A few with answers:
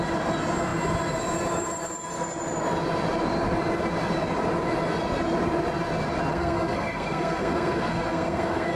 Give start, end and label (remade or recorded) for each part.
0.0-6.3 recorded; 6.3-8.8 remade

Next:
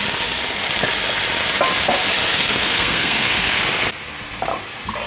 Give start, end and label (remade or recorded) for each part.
0.0-2.3 recorded; 2.3-3.6 remade; 3.6-5.1 recorded

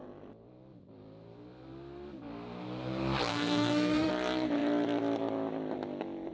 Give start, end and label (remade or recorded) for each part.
0.0-3.3 recorded; 3.3-4.1 remade; 4.1-6.3 recorded

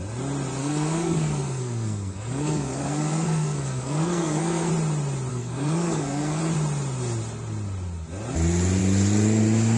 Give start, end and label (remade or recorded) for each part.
0.0-0.6 recorded; 0.6-4.7 remade; 4.7-5.3 recorded; 5.3-6.4 remade; 6.4-9.8 recorded

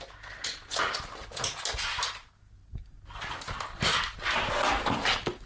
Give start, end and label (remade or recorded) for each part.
0.0-5.5 recorded

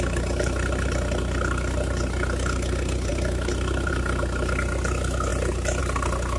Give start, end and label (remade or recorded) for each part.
0.0-6.4 recorded

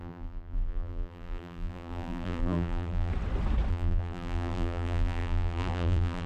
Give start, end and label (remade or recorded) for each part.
0.0-3.1 remade; 3.1-3.7 recorded; 3.7-6.3 remade